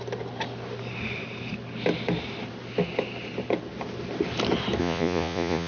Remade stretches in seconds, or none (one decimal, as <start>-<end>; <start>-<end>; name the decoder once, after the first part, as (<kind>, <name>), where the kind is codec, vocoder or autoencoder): 4.8-5.7 (vocoder, Vocos)